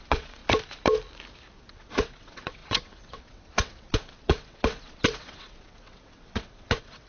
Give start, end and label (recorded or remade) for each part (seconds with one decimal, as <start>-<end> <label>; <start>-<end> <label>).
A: 0.0-0.4 remade; 0.4-1.7 recorded; 1.7-7.1 remade